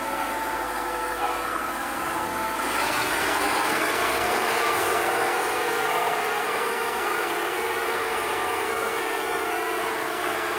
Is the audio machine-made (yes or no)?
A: yes